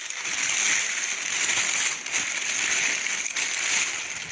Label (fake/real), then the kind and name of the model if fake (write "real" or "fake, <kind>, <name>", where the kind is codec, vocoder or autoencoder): real